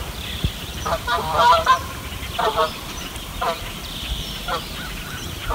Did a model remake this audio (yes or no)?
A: yes